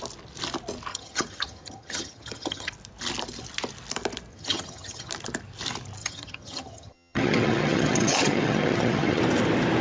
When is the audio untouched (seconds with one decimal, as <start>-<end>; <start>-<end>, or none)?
0.0-0.9; 2.7-4.3; 5.1-6.0; 9.2-9.8

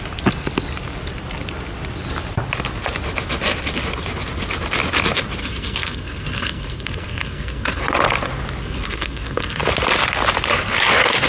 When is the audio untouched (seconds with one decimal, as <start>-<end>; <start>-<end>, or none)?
0.0-5.4; 7.8-8.6; 9.6-11.3

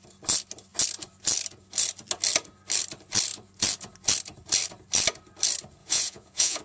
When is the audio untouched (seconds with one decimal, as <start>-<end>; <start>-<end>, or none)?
0.0-5.8

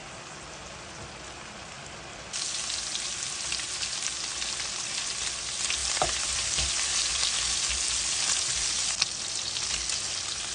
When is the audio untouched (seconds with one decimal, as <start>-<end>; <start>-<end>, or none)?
0.0-10.5

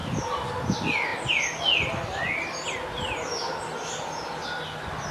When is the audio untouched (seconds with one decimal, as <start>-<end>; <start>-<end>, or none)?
0.0-5.1

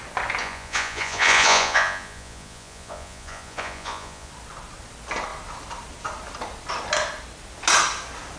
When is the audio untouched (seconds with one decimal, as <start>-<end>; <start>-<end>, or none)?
0.0-0.4; 4.3-8.4

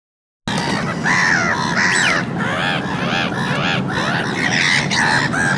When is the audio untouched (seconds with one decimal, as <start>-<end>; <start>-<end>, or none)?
0.0-5.6